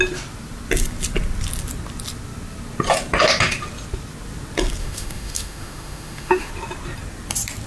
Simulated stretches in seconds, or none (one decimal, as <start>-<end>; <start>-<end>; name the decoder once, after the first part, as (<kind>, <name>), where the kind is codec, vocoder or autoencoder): 4.8-6.5 (autoencoder, DAC-VAE)